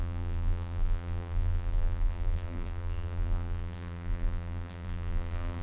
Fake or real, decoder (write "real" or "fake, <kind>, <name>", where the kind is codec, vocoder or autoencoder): fake, vocoder, BigVGAN v2